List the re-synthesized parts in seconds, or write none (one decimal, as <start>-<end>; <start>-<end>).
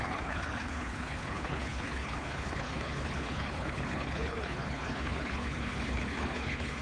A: 0.0-6.8